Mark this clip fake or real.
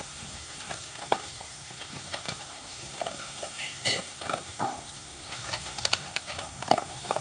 fake